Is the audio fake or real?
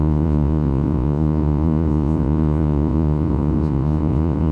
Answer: fake